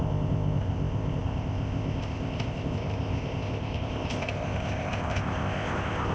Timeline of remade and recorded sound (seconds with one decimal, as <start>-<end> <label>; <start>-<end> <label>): 0.0-6.1 remade